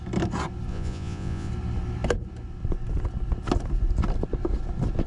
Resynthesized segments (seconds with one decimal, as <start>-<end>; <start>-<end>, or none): 0.7-1.5